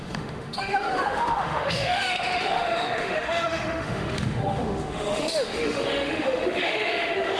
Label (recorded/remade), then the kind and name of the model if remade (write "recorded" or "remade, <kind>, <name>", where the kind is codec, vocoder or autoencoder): remade, autoencoder, DAC-VAE